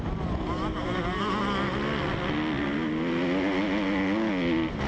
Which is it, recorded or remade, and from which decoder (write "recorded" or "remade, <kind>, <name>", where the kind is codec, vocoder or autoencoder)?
recorded